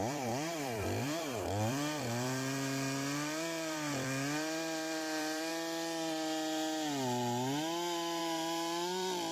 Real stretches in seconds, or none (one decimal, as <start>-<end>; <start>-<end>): 5.5-8.2